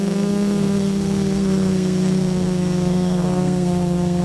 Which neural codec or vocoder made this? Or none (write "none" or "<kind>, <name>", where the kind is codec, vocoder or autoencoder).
codec, SNAC